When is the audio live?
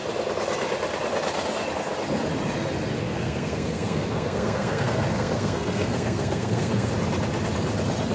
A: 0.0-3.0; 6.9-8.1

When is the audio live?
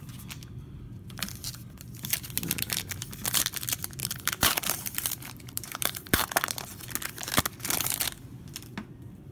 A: 0.0-4.0; 6.3-9.3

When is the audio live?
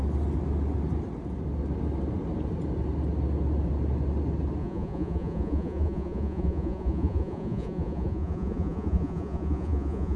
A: 0.0-4.6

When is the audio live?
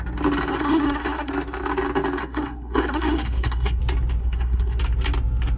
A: 0.0-0.5; 1.3-2.2; 3.8-4.2; 4.8-5.6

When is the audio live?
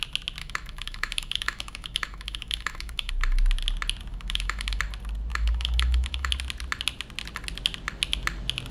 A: 0.0-0.4; 3.1-4.1; 4.8-5.3; 6.3-8.7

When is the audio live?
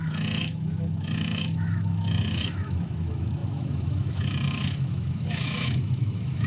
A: none